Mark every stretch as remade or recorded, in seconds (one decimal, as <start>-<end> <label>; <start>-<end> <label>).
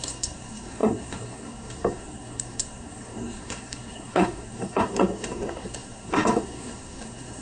0.0-7.4 remade